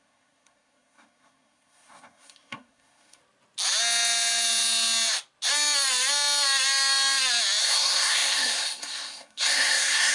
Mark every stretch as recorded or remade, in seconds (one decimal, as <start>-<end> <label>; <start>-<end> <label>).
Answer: 0.0-3.2 remade; 3.2-7.6 recorded; 7.6-10.1 remade

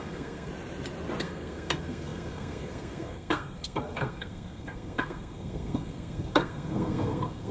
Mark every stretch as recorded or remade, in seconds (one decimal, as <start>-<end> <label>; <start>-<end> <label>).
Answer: 0.0-0.5 remade; 0.5-1.2 recorded; 1.2-7.5 remade